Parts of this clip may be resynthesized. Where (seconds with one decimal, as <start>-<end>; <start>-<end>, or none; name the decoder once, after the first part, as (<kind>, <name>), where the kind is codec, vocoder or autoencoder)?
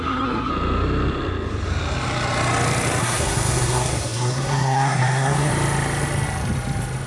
0.0-0.5 (codec, SNAC); 3.0-5.5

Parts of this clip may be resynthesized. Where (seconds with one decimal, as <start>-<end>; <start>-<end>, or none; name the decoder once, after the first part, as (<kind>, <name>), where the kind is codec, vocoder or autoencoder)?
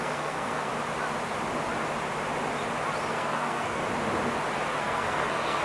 0.0-0.7 (codec, SNAC); 3.1-3.8; 4.8-5.6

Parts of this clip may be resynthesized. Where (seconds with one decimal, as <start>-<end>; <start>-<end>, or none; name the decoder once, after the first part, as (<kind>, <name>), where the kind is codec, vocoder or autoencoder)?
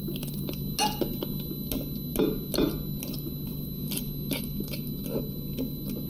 none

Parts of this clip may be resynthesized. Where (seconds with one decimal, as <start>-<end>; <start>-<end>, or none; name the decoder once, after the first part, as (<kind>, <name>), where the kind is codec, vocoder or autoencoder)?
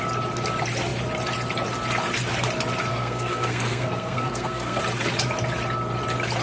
2.9-4.8 (codec, SNAC)